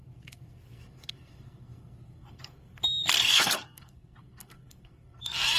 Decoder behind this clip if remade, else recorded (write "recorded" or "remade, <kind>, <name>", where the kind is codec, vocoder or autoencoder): remade, codec, SNAC